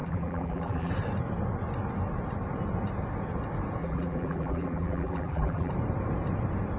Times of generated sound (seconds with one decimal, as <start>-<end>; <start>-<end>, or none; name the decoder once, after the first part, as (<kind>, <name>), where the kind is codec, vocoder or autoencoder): 0.0-0.9 (vocoder, BigVGAN v2); 3.8-5.7